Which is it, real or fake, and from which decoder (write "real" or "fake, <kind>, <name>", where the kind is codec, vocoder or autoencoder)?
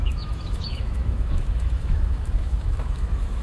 fake, autoencoder, DAC-VAE